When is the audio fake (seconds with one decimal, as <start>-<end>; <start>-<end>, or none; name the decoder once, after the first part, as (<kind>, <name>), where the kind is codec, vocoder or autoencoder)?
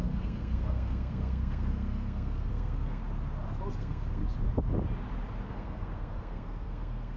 0.0-3.0 (codec, SNAC); 3.7-4.2; 5.5-7.2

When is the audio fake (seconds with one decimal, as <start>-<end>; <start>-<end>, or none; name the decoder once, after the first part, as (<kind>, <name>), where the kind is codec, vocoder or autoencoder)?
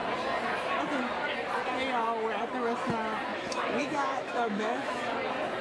3.3-5.0 (autoencoder, DAC-VAE)